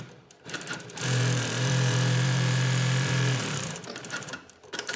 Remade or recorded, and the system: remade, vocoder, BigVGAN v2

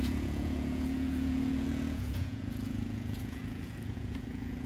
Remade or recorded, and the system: remade, vocoder, Vocos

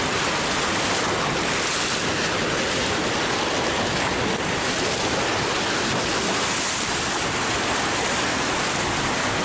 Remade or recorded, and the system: recorded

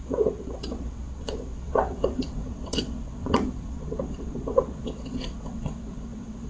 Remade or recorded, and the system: remade, vocoder, WaveNeXt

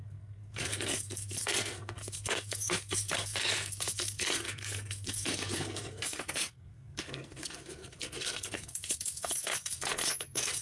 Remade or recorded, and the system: remade, codec, SNAC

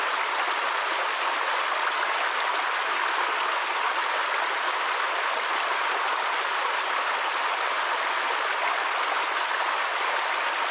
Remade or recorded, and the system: recorded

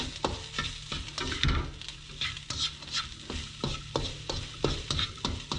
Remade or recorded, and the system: recorded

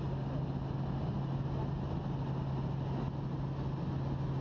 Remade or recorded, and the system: recorded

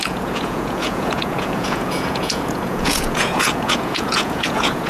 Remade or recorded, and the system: remade, vocoder, Vocos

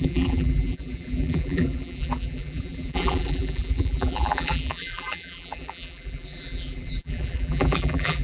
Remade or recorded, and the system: remade, vocoder, BigVGAN v2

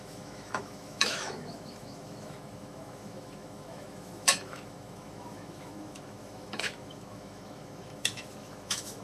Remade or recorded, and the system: remade, autoencoder, DAC-VAE